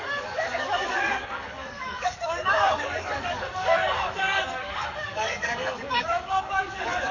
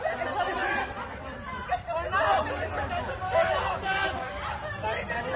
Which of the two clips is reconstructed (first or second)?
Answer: first